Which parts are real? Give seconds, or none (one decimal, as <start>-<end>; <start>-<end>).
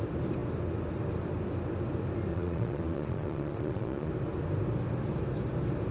0.0-2.3; 4.1-5.9